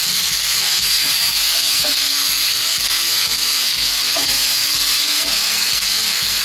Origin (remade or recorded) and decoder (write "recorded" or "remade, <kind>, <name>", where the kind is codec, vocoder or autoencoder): remade, codec, SNAC